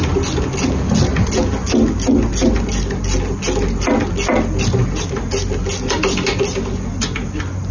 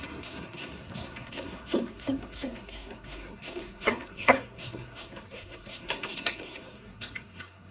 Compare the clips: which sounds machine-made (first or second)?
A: second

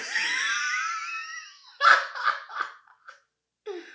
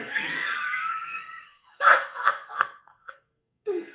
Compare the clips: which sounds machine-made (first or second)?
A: second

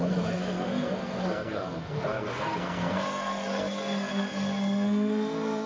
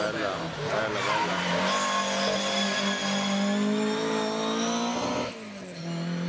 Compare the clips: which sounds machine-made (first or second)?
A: first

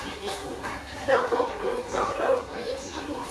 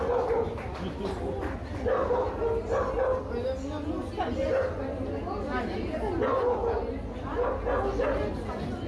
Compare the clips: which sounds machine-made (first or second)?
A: first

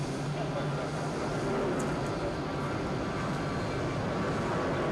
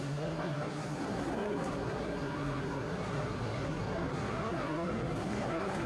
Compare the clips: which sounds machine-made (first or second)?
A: second